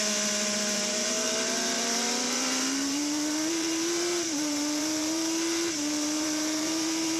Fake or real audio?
fake